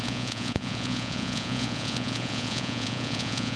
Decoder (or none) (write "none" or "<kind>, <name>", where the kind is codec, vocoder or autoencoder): vocoder, Vocos